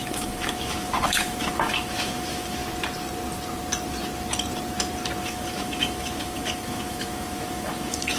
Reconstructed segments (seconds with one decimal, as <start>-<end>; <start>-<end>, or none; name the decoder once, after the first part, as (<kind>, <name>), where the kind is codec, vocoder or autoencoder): 0.0-2.6 (autoencoder, DAC-VAE); 5.2-8.2